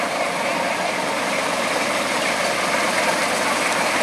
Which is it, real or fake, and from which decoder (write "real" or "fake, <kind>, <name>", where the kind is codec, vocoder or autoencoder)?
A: real